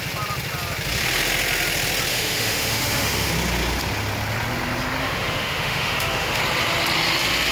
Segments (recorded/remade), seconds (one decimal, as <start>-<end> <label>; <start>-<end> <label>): 0.0-2.1 recorded; 2.1-3.3 remade; 3.3-5.0 recorded; 5.0-6.4 remade; 6.4-7.5 recorded